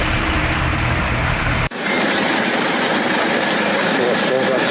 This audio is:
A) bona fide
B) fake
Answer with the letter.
B